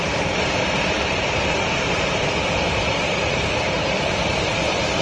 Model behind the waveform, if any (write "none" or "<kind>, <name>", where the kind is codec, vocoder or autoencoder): vocoder, BigVGAN v2